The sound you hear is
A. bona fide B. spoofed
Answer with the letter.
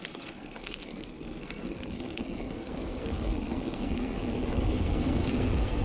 B